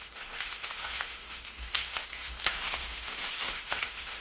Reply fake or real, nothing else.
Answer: fake